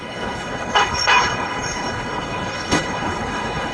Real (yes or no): no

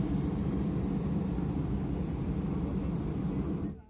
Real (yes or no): yes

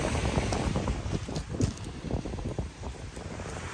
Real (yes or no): yes